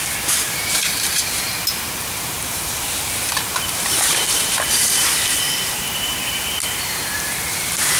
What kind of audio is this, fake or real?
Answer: fake